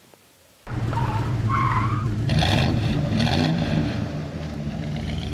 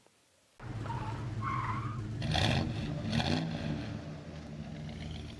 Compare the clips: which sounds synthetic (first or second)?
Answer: first